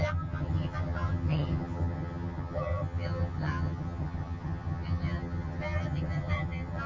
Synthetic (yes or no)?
yes